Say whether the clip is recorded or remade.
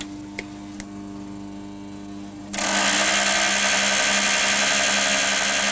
recorded